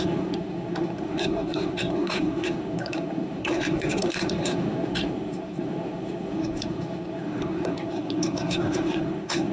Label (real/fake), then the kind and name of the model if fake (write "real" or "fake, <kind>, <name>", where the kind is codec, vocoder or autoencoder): fake, codec, SNAC